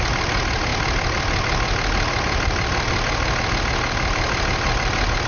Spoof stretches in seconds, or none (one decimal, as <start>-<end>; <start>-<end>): none

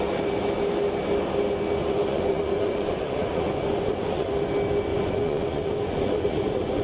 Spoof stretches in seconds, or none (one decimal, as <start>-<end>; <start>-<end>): 1.8-4.3; 4.9-6.8

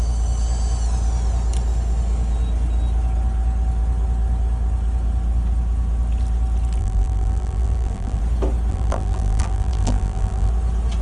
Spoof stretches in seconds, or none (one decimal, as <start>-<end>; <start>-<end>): 6.8-8.2; 8.7-10.5

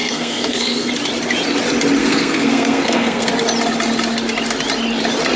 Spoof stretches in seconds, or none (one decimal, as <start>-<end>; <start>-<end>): 0.0-0.9; 2.0-3.3